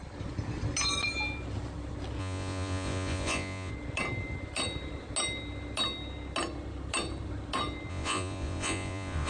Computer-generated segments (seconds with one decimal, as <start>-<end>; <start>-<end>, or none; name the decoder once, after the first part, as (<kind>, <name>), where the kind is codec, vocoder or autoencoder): 2.2-3.7 (vocoder, Vocos); 7.9-9.3